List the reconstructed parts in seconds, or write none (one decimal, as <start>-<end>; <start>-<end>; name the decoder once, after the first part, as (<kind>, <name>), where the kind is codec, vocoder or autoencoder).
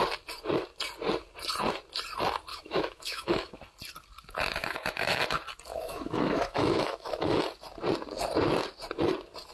2.5-3.6 (autoencoder, DAC-VAE); 4.6-5.2; 5.7-7.4